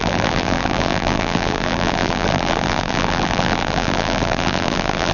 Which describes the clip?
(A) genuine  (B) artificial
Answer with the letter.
B